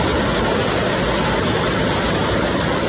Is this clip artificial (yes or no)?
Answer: no